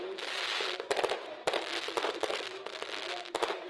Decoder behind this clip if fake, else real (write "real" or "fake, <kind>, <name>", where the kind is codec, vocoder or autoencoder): real